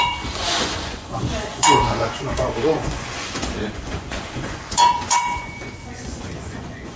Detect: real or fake fake